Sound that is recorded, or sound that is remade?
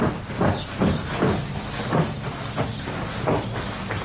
recorded